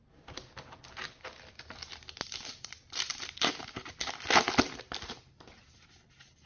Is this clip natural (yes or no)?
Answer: yes